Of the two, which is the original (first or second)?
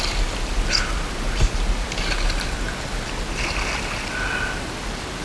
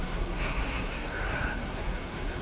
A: first